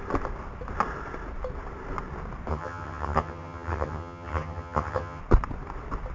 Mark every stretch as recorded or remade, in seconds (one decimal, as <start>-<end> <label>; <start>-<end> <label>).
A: 0.0-2.5 recorded; 2.5-5.2 remade; 5.2-6.1 recorded